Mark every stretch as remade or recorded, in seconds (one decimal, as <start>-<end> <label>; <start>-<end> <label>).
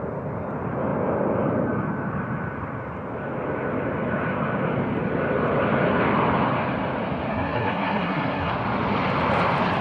0.0-7.3 recorded; 7.3-8.5 remade; 8.5-9.8 recorded